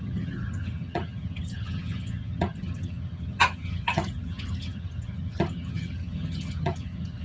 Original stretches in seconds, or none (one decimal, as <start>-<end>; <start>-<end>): none